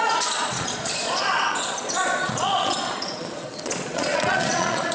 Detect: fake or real fake